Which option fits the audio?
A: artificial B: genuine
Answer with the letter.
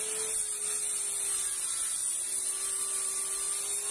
B